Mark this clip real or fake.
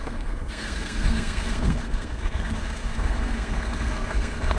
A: fake